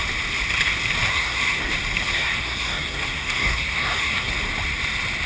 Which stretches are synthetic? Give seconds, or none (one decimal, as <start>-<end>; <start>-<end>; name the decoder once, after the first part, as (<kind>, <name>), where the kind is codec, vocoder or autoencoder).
1.1-1.7 (codec, SNAC); 2.1-4.3